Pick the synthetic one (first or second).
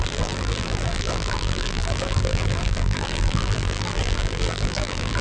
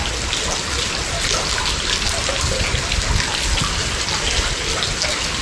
first